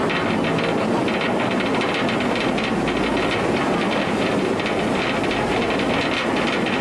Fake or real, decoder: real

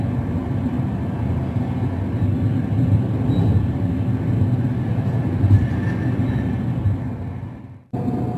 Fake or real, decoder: real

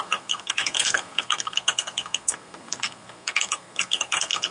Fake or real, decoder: fake, codec, SNAC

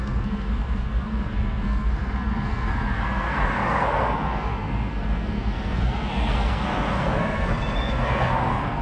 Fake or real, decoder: fake, codec, SNAC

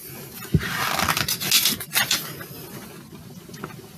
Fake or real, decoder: real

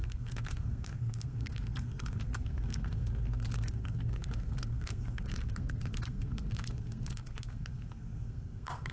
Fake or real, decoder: fake, codec, SNAC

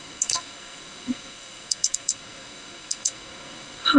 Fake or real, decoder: fake, codec, SNAC